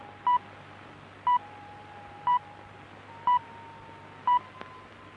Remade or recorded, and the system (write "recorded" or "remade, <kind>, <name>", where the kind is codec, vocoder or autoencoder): recorded